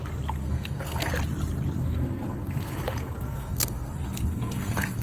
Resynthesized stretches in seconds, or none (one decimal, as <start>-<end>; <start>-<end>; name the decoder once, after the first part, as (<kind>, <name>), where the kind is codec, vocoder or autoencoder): 0.4-1.1 (codec, SNAC); 1.8-5.0